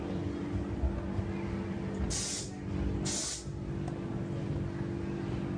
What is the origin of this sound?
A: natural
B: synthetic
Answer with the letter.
A